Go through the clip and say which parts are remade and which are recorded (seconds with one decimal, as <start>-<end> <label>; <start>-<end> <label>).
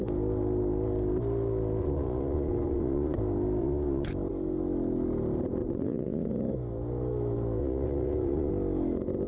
0.0-1.8 recorded; 1.8-3.2 remade; 3.2-3.6 recorded; 3.6-4.1 remade; 4.1-5.6 recorded; 5.6-6.3 remade; 6.3-7.6 recorded; 7.6-8.5 remade; 8.5-9.3 recorded